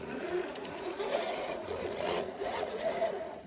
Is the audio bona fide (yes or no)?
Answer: no